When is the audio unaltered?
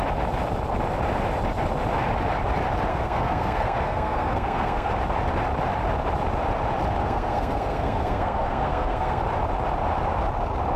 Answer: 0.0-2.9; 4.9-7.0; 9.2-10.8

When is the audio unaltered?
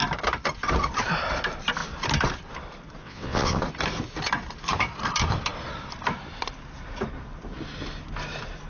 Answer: 0.0-3.0; 3.6-8.7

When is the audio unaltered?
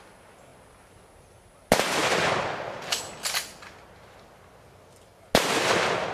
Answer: 0.0-6.1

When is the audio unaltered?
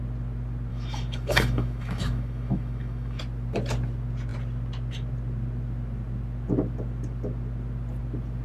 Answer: 0.0-0.7; 3.2-8.4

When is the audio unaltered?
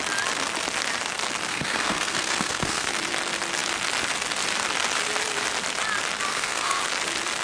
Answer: 0.0-1.5; 2.9-6.3; 6.8-7.4